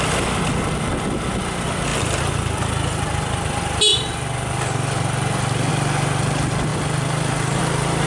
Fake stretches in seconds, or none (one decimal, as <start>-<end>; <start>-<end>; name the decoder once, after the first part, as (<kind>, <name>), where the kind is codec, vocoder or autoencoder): none